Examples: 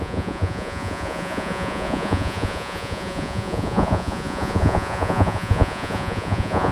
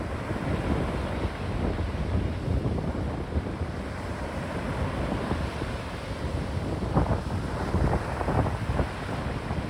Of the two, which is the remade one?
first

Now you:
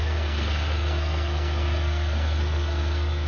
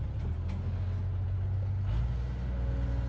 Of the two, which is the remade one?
first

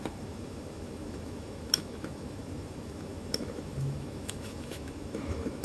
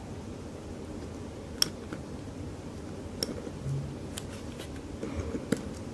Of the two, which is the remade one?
first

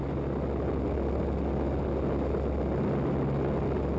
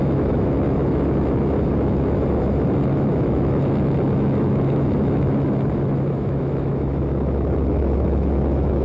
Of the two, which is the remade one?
second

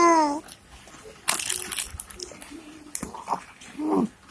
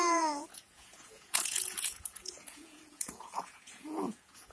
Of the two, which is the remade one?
second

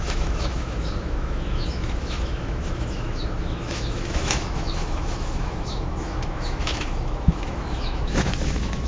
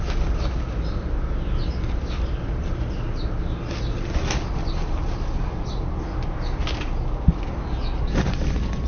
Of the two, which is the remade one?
first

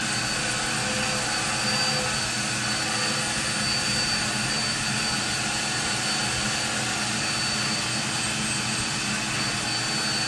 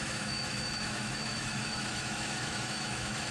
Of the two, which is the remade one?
second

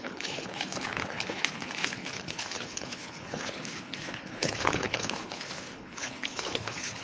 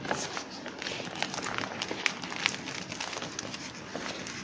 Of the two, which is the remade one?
first